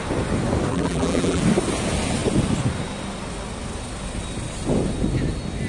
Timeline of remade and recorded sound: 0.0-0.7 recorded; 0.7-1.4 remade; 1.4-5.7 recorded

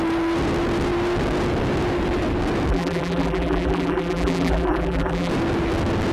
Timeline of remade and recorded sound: 0.0-2.7 recorded; 2.7-5.3 remade; 5.3-6.1 recorded

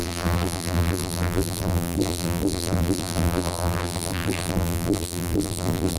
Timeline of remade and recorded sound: 0.0-6.0 remade

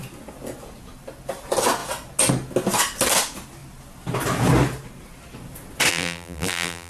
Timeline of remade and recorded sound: 0.0-5.9 recorded; 5.9-6.9 remade

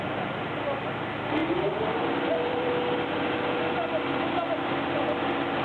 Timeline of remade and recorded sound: 0.0-1.4 recorded; 1.4-2.7 remade; 2.7-5.6 recorded

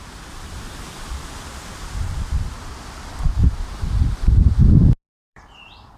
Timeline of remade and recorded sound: 0.0-3.4 remade; 3.4-3.9 recorded; 3.9-6.0 remade